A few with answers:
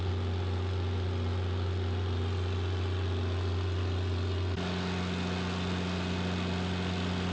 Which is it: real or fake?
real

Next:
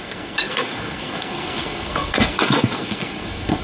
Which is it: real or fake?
fake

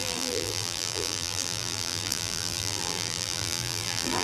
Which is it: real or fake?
fake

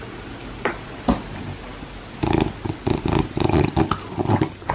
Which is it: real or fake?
real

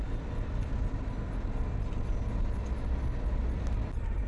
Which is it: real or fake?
real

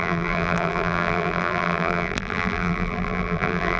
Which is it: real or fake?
fake